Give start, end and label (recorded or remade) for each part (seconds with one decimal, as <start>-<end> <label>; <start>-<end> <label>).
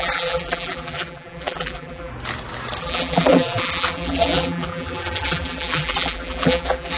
0.0-2.1 remade; 2.1-2.8 recorded; 2.8-7.0 remade